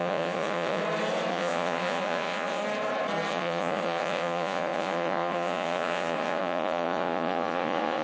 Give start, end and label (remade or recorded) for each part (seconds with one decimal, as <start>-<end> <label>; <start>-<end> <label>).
0.0-0.8 remade; 0.8-1.3 recorded; 1.3-2.6 remade; 2.6-3.3 recorded; 3.3-8.0 remade